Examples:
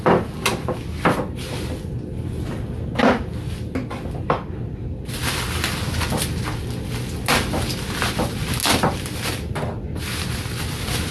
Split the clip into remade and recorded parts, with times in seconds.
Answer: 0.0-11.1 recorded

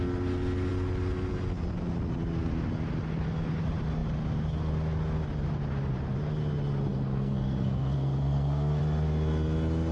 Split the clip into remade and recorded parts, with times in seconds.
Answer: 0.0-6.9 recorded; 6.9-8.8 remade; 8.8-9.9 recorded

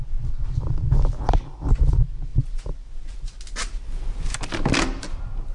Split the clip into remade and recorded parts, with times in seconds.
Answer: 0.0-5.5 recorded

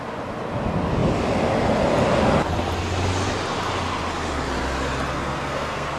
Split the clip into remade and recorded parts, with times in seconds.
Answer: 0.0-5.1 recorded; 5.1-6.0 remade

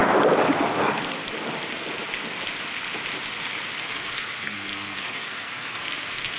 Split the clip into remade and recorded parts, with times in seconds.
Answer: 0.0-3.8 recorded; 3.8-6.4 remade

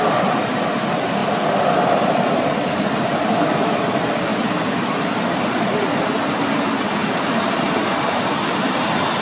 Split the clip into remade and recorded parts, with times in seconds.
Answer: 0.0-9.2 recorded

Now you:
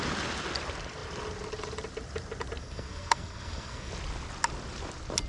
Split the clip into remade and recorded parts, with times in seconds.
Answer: 0.0-2.6 recorded; 2.6-3.9 remade; 3.9-5.3 recorded

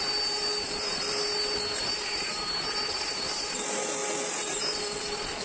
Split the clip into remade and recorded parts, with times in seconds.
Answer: 0.0-5.4 recorded